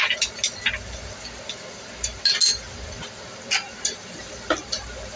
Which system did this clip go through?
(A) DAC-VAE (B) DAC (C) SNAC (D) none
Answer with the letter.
D